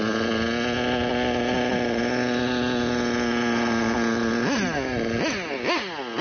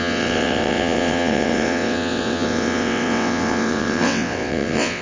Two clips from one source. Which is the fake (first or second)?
second